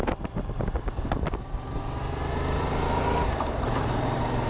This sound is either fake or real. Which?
fake